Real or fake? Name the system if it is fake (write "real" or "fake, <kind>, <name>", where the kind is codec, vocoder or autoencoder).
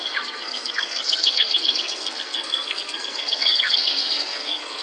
fake, codec, SNAC